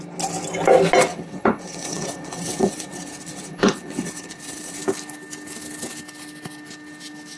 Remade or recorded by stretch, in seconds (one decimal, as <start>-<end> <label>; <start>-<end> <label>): 0.0-1.1 recorded; 1.1-4.8 remade; 4.8-7.4 recorded